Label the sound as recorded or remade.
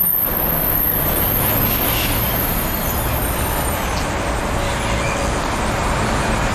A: recorded